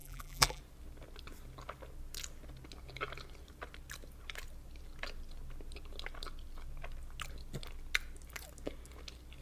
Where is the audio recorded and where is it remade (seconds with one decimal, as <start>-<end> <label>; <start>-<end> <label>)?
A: 0.0-0.6 remade; 0.6-9.4 recorded